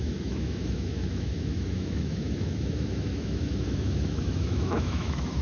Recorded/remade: remade